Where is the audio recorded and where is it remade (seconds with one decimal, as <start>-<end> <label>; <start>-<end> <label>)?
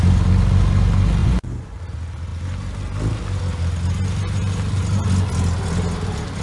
0.0-1.2 recorded; 1.2-1.8 remade; 1.8-6.4 recorded